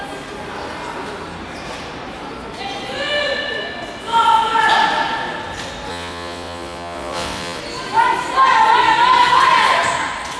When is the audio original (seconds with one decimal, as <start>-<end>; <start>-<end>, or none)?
0.0-5.9; 7.6-10.4